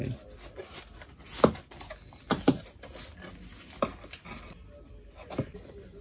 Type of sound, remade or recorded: recorded